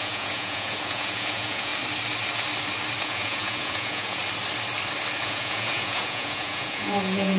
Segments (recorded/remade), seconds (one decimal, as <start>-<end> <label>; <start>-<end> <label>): 0.0-1.7 remade; 1.7-3.0 recorded; 3.0-4.2 remade; 4.2-5.2 recorded; 5.2-7.4 remade